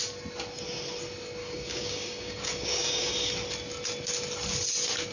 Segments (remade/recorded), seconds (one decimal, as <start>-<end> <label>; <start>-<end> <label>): 0.0-1.4 recorded; 1.4-3.3 remade; 3.3-5.1 recorded